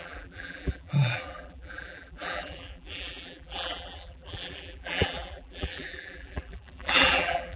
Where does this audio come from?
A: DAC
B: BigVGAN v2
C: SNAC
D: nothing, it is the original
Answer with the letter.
B